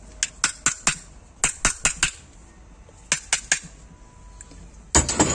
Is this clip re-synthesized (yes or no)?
no